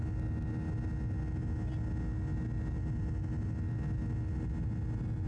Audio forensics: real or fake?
real